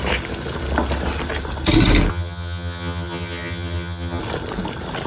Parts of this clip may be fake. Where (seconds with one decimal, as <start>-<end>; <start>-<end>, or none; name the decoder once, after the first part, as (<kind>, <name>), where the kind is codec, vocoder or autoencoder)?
2.1-4.2 (vocoder, HiFi-GAN)